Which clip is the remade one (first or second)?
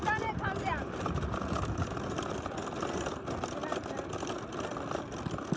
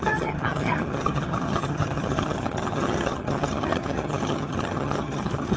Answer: second